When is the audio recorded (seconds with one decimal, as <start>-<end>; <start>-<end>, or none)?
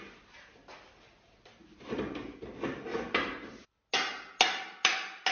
0.0-5.3